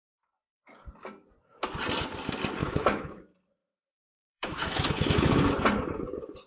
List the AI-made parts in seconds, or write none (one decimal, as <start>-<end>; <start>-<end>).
2.6-3.2; 3.6-5.5